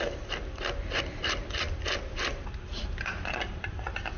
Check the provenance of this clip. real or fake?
real